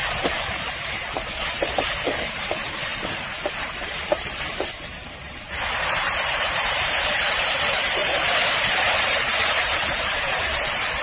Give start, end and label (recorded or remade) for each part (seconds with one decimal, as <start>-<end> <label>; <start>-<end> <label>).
0.0-2.3 recorded; 2.3-11.0 remade